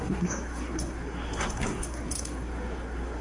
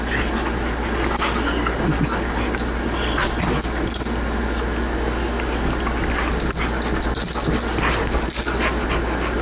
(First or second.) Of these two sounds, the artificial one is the first